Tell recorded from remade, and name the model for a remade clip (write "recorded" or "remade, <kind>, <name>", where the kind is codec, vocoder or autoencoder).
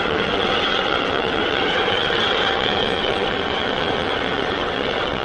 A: remade, vocoder, WaveNeXt